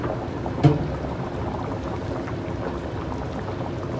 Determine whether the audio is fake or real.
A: real